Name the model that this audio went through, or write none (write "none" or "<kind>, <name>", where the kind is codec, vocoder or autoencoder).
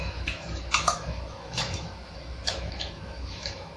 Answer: autoencoder, DAC-VAE